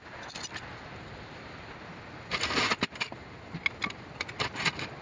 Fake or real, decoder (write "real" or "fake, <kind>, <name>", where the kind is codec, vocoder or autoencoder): real